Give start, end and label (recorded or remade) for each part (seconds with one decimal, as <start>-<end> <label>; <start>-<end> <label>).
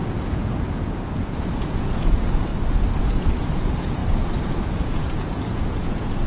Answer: 0.0-2.5 remade; 2.5-3.0 recorded; 3.0-4.0 remade; 4.0-4.5 recorded; 4.5-6.3 remade